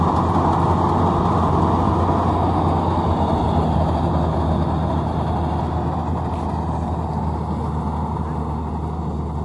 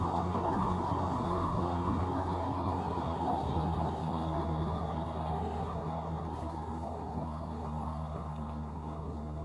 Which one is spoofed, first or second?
second